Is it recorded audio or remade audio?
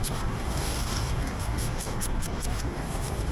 remade